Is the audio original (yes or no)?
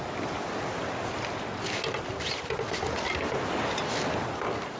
yes